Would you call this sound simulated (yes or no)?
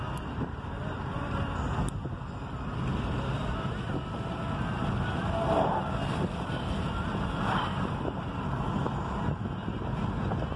no